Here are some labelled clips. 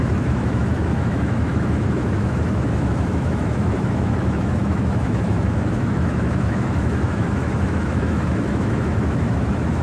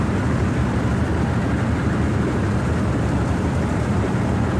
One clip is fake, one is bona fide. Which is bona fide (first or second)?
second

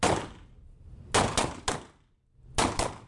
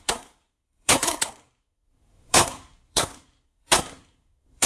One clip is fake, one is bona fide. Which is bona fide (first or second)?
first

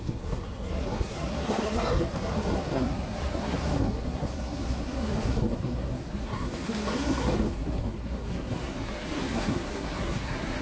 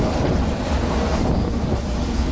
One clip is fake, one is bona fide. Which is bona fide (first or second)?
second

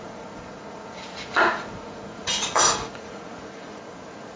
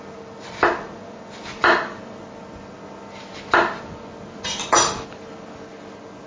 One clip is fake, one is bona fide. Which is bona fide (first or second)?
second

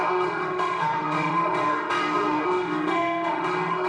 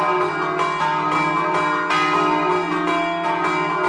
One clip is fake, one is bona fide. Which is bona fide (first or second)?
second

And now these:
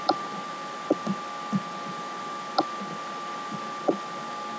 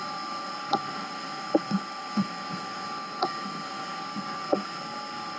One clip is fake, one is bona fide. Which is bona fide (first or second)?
first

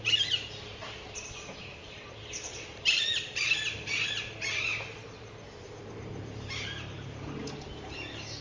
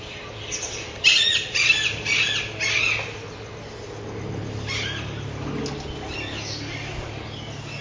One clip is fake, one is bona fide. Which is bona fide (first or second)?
second